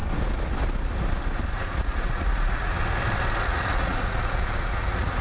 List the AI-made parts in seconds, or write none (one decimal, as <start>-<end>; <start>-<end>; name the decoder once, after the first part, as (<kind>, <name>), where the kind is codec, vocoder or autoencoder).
1.5-2.8 (vocoder, Vocos); 3.4-5.2